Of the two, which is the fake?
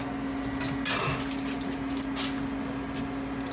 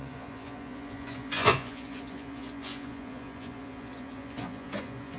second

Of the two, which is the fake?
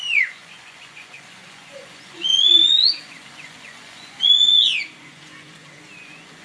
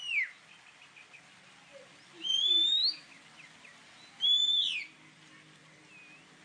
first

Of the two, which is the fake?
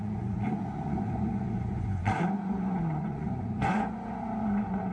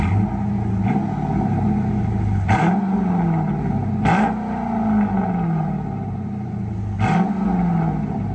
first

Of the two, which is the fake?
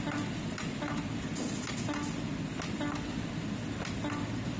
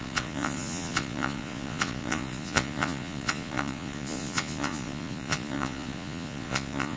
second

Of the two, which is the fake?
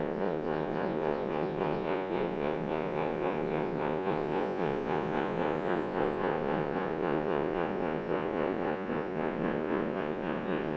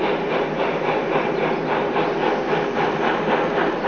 first